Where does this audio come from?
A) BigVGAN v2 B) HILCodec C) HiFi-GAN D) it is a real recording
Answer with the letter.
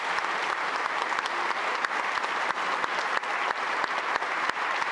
D